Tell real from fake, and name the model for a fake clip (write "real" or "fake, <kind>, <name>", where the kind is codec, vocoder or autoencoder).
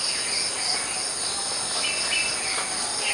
real